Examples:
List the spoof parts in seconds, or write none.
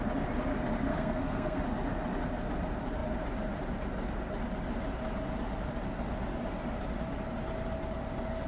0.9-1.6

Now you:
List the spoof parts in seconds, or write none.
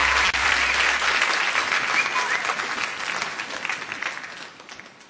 0.0-0.5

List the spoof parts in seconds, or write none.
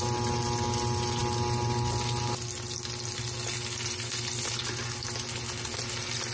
none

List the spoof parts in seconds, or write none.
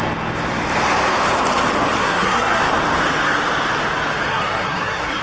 2.0-2.6; 4.3-5.2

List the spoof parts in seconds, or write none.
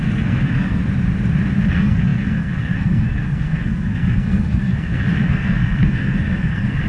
0.0-0.8; 1.7-6.9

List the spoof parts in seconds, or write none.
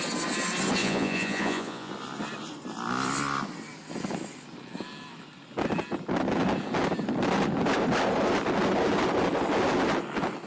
0.8-1.9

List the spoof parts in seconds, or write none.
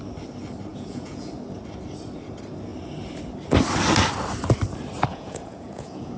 0.7-1.3; 5.1-6.2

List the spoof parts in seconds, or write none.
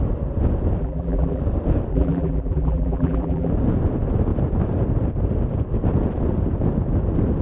0.8-1.4; 1.9-3.5